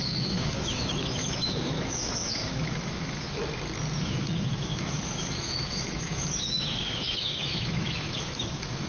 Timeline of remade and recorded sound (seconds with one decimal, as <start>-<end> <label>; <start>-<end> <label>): 0.0-3.4 remade; 3.4-4.0 recorded; 4.0-8.9 remade